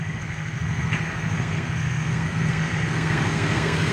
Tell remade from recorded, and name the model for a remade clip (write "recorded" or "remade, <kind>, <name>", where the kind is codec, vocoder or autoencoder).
remade, codec, SNAC